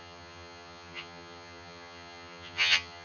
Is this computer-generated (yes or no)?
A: yes